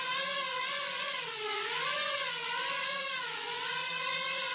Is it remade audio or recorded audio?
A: remade